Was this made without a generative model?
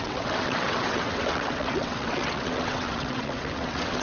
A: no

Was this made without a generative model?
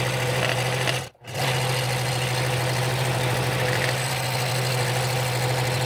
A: yes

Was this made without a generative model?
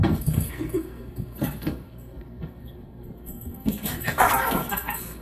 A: no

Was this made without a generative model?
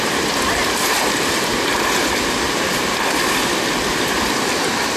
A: yes